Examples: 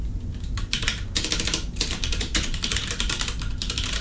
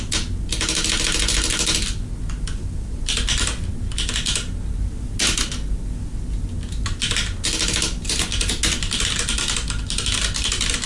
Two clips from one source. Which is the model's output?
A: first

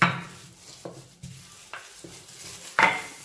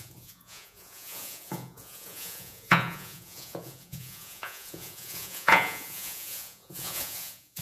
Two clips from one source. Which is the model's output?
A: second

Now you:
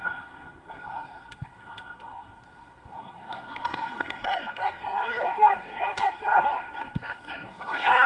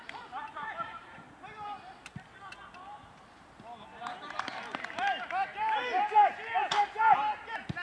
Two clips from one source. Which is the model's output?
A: first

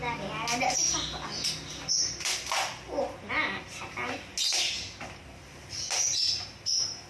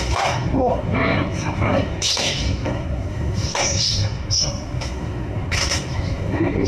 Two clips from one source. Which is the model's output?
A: second